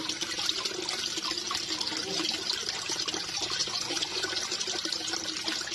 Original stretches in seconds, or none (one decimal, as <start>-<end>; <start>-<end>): 0.0-3.6; 4.3-5.7